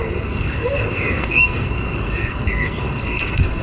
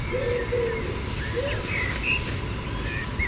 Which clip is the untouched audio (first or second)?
second